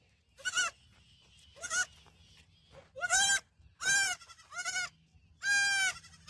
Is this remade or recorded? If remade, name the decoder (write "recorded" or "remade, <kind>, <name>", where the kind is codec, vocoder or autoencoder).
recorded